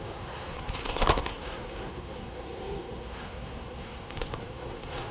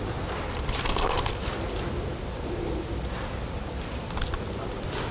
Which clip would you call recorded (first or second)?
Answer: second